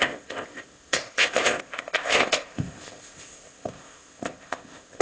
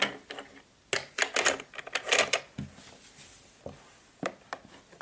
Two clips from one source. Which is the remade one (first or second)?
first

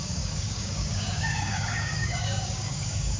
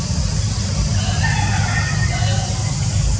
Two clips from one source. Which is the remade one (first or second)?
first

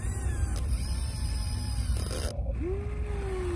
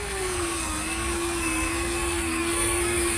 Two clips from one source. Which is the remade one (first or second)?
second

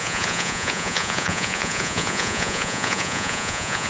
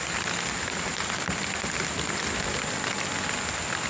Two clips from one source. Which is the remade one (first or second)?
first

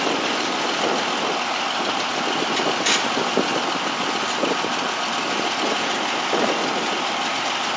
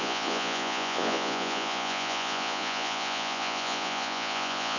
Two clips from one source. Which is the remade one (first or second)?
second